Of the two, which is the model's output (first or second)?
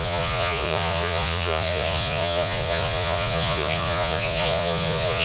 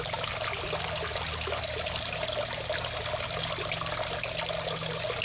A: first